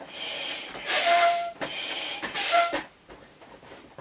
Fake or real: fake